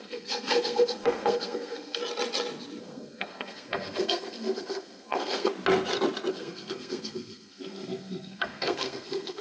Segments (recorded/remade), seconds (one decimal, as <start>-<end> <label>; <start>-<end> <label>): 0.0-2.0 remade; 2.0-2.8 recorded; 2.8-5.5 remade; 5.5-6.3 recorded; 6.3-9.4 remade